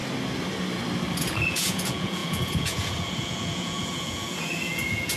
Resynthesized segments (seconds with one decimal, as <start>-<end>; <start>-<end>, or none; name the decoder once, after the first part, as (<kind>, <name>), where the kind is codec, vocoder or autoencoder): 1.2-5.2 (vocoder, Vocos)